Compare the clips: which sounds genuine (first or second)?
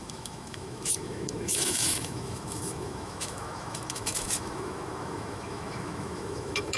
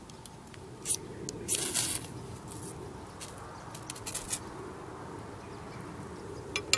second